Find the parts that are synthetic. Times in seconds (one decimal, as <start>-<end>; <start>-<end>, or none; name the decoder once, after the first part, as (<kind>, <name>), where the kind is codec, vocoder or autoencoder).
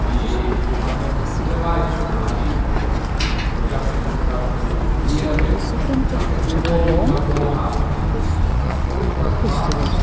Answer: 8.5-9.3 (vocoder, Vocos)